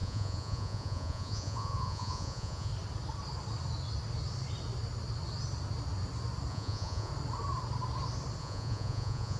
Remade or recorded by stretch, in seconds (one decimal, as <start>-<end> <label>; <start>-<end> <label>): 0.0-2.7 remade; 2.7-6.5 recorded; 6.5-7.1 remade; 7.1-8.4 recorded; 8.4-9.4 remade